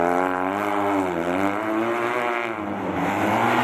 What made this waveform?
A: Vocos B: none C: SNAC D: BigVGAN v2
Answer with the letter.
B